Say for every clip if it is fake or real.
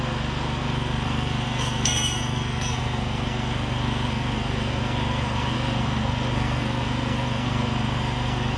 fake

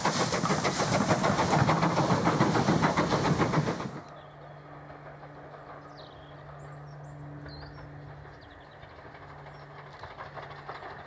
real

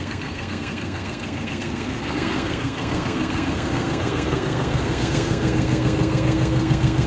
fake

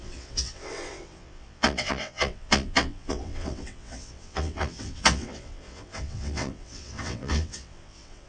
fake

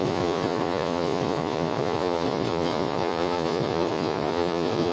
fake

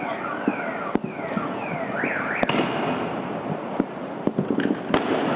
real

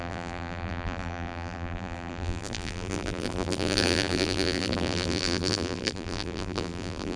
fake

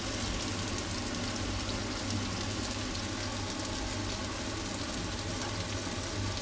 real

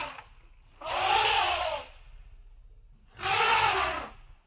real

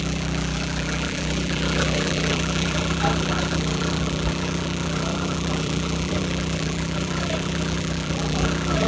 fake